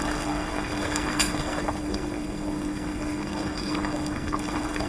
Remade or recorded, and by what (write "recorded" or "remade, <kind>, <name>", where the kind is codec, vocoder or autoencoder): remade, codec, SNAC